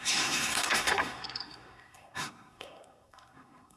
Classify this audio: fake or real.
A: fake